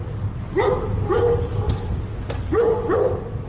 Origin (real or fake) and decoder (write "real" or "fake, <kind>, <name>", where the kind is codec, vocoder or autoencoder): real